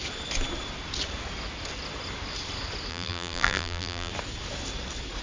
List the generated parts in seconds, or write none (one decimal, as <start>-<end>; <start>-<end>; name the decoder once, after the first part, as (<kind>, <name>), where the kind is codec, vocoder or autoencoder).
2.9-4.1 (vocoder, BigVGAN v2)